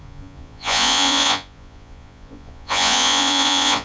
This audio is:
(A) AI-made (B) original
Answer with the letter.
A